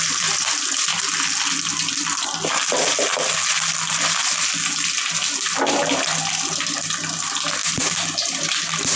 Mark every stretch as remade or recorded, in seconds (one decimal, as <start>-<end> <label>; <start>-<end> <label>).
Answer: 0.0-0.9 remade; 0.9-1.9 recorded; 1.9-2.9 remade; 2.9-5.8 recorded; 5.8-7.6 remade; 7.6-8.3 recorded; 8.3-9.0 remade